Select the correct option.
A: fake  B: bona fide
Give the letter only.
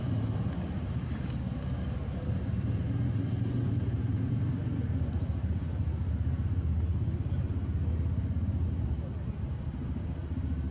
B